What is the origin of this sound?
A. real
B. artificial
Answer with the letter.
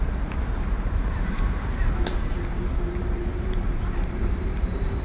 B